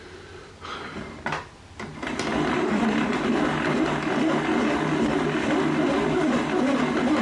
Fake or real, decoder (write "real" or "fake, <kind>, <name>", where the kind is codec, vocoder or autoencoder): real